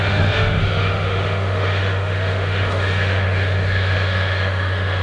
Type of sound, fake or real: fake